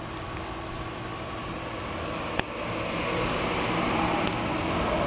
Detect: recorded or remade recorded